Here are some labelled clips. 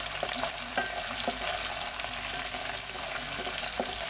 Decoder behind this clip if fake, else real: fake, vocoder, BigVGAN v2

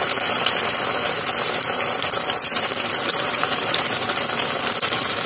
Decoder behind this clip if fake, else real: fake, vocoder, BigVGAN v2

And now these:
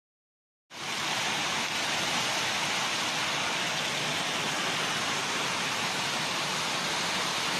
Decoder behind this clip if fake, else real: real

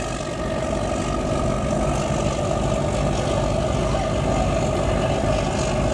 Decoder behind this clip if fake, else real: real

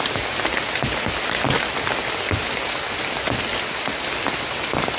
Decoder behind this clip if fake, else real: real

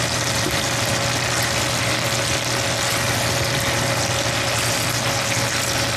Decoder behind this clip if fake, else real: real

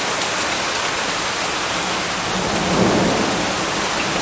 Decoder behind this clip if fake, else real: real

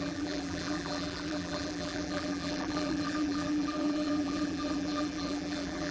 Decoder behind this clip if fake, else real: fake, vocoder, BigVGAN v2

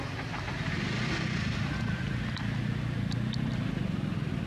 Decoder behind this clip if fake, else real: real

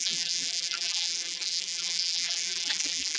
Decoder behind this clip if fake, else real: fake, vocoder, BigVGAN v2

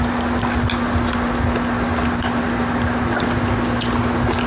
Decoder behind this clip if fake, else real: real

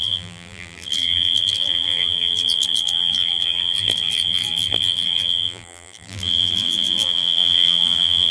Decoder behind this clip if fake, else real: fake, vocoder, BigVGAN v2